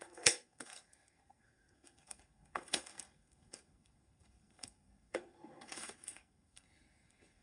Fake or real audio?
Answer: fake